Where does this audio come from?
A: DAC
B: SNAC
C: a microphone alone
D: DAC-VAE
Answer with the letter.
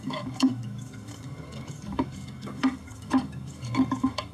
A